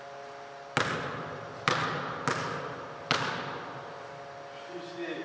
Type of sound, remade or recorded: recorded